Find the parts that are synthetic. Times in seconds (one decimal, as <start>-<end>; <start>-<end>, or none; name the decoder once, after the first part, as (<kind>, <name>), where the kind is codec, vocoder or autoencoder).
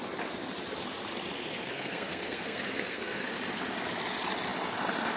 1.3-3.3 (codec, SNAC)